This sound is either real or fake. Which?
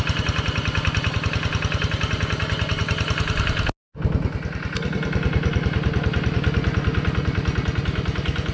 real